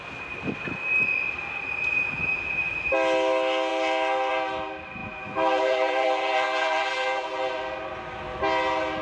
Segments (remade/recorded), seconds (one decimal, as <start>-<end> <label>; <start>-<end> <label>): 0.0-1.9 recorded; 1.9-2.7 remade; 2.7-5.0 recorded; 5.0-7.5 remade; 7.5-9.0 recorded